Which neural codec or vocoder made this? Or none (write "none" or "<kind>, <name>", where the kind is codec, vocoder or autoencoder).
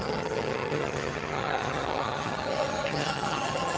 vocoder, HiFi-GAN